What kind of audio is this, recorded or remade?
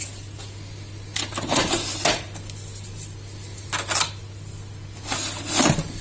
recorded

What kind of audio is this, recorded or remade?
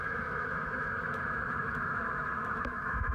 remade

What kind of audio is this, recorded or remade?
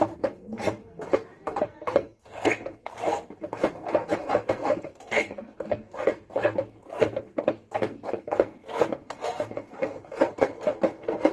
remade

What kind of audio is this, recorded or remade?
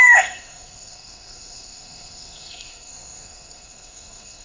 remade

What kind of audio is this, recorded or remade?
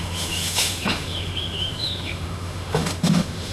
remade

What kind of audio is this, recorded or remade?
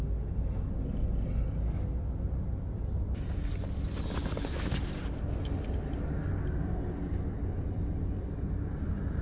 recorded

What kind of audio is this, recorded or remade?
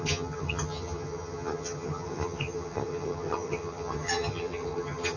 remade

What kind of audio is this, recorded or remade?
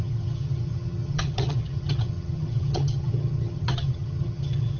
remade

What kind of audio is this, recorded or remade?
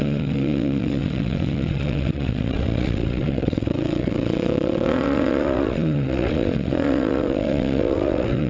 remade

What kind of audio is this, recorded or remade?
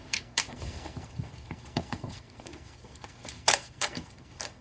remade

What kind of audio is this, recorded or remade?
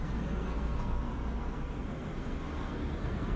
remade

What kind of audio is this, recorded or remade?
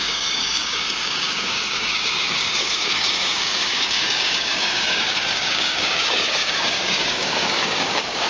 remade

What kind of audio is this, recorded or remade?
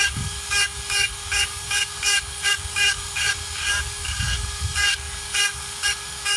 remade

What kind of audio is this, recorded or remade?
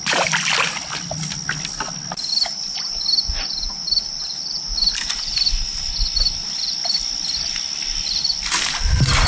recorded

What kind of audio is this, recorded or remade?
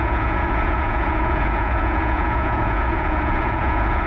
remade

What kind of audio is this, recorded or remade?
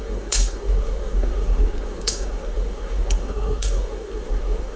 remade